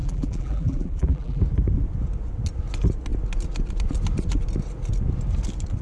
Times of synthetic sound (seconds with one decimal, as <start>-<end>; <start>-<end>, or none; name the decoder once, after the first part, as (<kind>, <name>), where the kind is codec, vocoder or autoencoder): 0.0-1.4 (vocoder, BigVGAN v2)